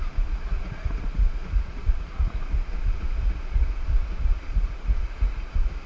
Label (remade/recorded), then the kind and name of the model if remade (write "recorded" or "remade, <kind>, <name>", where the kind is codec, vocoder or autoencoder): remade, vocoder, Vocos